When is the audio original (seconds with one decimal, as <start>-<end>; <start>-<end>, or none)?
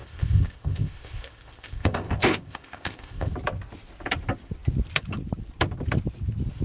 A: 3.3-6.6